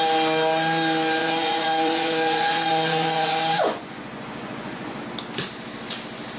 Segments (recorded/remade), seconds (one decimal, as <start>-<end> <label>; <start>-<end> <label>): 0.0-1.2 recorded; 1.2-5.0 remade; 5.0-6.4 recorded